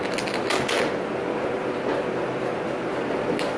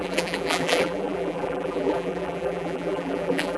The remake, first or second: second